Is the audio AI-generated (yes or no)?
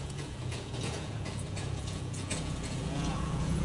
yes